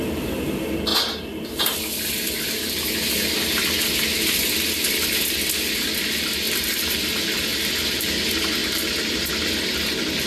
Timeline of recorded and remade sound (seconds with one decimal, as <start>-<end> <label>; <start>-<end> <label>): 0.0-0.9 recorded; 0.9-1.6 remade; 1.6-7.5 recorded; 7.5-8.1 remade; 8.1-8.6 recorded; 8.6-9.3 remade; 9.3-10.3 recorded